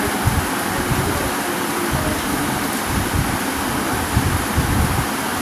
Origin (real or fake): real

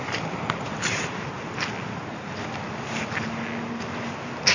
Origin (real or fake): real